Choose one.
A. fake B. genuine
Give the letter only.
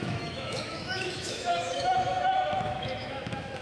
A